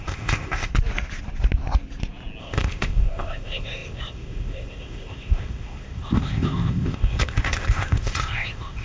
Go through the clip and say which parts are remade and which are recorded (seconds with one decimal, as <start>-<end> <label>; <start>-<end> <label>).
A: 0.0-0.7 remade; 0.7-2.4 recorded; 2.4-8.8 remade